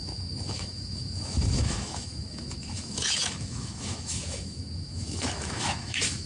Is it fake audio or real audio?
fake